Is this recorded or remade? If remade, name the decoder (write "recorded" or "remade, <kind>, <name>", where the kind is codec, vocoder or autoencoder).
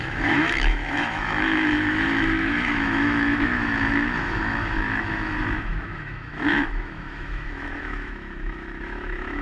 remade, autoencoder, DAC-VAE